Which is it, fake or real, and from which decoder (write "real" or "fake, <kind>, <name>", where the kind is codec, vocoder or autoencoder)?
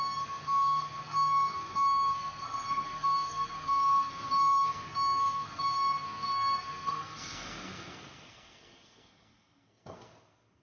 fake, codec, SNAC